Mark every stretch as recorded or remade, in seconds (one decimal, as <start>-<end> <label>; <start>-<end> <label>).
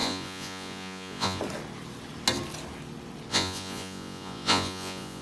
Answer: 0.0-1.4 remade; 1.4-3.3 recorded; 3.3-5.2 remade